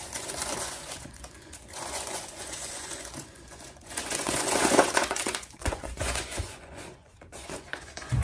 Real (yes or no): no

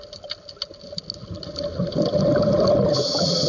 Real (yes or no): yes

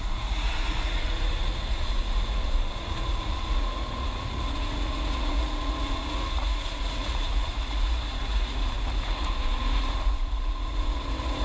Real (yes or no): no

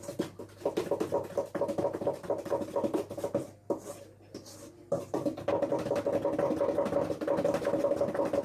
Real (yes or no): yes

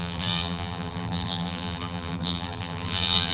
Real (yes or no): no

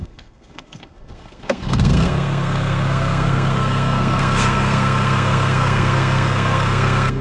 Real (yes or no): no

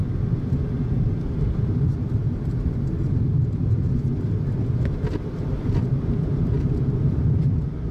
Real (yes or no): yes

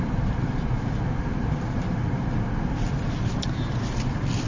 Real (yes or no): yes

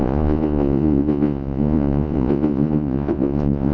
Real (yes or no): no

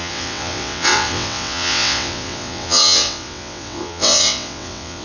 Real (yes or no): no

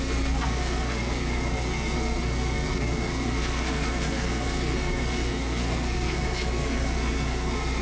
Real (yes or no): no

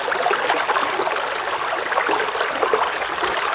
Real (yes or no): yes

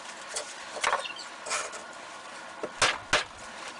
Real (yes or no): yes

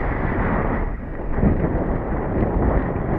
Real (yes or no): no